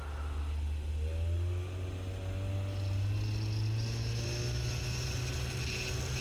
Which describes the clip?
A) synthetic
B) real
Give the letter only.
B